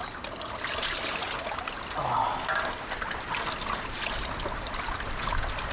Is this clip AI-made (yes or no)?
no